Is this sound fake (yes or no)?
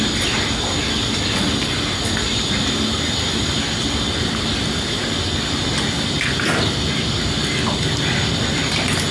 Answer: no